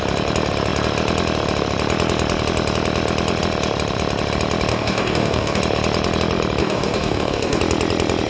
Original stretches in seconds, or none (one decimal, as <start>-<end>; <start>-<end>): 0.0-4.7; 5.6-6.6; 7.6-8.3